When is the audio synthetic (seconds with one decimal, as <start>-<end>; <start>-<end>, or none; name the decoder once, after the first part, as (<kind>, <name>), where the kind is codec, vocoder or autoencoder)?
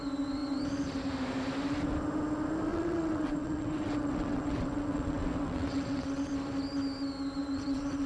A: 2.7-6.3 (vocoder, WaveNeXt); 7.4-8.1